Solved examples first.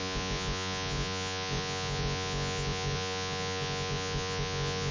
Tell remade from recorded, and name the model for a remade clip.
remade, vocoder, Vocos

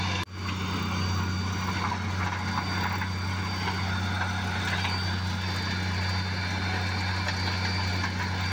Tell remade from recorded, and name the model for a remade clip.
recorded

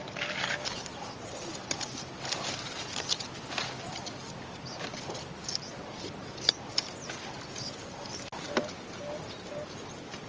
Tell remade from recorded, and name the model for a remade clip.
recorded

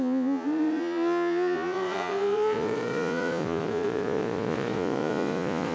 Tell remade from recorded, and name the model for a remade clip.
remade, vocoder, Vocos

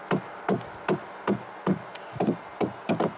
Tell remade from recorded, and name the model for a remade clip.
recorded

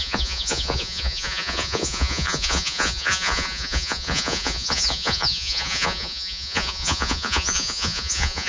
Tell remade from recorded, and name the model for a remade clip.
remade, vocoder, Vocos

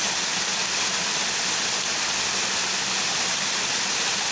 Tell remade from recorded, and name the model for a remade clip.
recorded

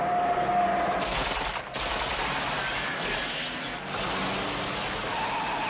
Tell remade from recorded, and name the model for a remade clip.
recorded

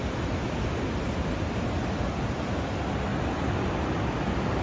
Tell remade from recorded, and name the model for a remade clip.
recorded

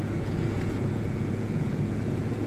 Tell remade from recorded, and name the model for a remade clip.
remade, vocoder, Vocos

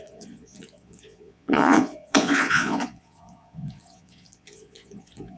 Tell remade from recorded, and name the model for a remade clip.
remade, vocoder, Vocos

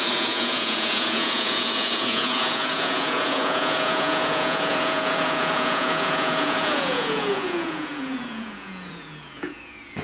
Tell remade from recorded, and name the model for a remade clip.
remade, vocoder, Vocos